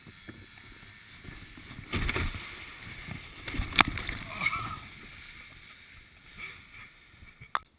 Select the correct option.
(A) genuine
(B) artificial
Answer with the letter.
A